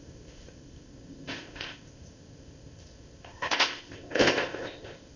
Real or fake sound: fake